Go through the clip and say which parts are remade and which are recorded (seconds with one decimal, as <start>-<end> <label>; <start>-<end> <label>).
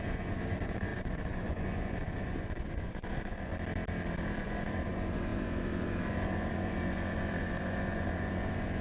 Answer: 0.0-3.5 remade; 3.5-4.4 recorded; 4.4-8.8 remade